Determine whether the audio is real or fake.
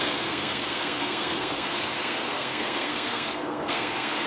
fake